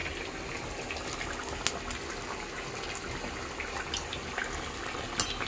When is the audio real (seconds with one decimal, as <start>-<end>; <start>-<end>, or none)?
0.0-5.5